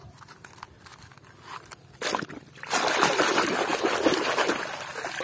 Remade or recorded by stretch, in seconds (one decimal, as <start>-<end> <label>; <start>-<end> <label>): 0.0-5.2 recorded